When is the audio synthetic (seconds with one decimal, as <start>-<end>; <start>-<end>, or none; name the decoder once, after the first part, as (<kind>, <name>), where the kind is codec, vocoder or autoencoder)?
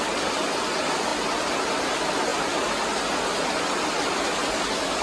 none